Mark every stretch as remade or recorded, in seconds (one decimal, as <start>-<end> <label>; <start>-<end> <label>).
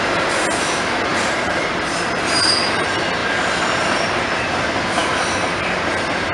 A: 0.0-1.1 recorded; 1.1-1.7 remade; 1.7-3.2 recorded; 3.2-4.2 remade; 4.2-6.3 recorded